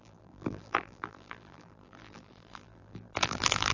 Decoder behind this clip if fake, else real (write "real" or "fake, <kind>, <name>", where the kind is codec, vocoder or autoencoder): fake, vocoder, BigVGAN v2